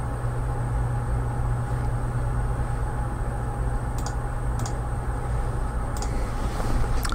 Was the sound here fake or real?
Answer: real